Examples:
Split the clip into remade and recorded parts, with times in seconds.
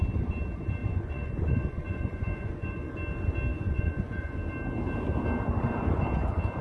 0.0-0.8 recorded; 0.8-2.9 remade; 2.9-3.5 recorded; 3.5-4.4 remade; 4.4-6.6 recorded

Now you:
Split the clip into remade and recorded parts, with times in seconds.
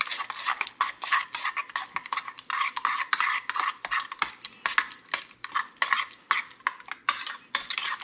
0.0-0.5 recorded; 0.5-1.2 remade; 1.2-8.0 recorded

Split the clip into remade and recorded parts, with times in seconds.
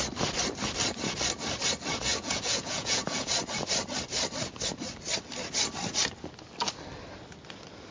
0.0-2.1 recorded; 2.1-3.3 remade; 3.3-7.9 recorded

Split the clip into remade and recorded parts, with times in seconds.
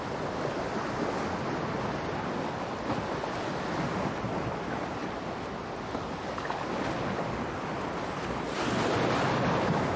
0.0-10.0 recorded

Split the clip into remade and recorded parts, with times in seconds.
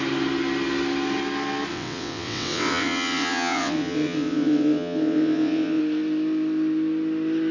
0.0-1.7 recorded; 1.7-5.8 remade; 5.8-7.5 recorded